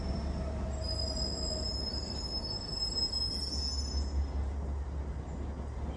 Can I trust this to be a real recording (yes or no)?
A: yes